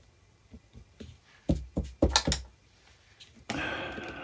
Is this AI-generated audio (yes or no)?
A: no